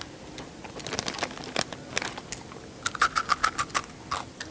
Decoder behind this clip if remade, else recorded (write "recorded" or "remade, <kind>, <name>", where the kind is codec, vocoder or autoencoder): recorded